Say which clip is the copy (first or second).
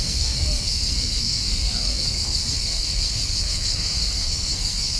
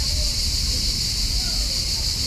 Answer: first